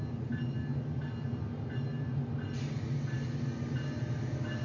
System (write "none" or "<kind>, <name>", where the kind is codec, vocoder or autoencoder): none